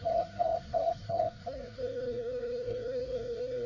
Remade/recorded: remade